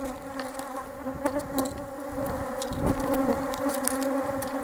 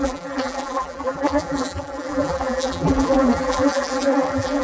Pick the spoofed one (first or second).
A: second